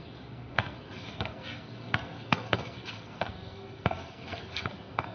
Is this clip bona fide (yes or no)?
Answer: no